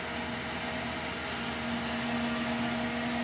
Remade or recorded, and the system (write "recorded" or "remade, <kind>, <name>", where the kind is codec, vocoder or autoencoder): recorded